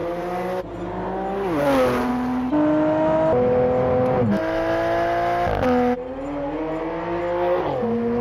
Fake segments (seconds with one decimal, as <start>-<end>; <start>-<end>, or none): none